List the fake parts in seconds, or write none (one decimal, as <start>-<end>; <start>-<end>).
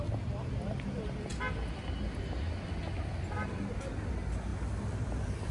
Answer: none